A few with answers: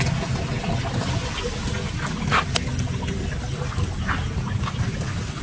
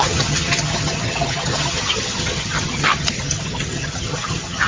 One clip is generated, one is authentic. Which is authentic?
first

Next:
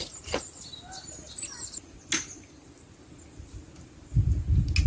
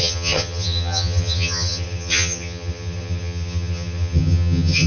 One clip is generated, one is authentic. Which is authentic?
first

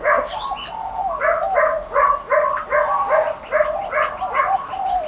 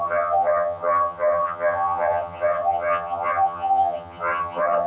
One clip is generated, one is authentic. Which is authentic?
first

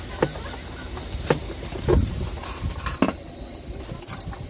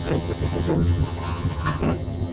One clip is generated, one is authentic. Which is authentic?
first